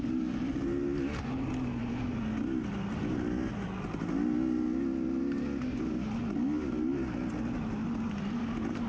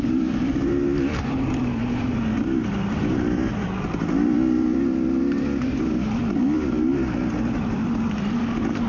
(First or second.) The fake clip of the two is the second